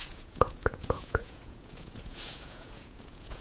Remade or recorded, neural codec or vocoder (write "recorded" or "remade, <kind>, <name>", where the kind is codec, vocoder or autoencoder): remade, vocoder, Vocos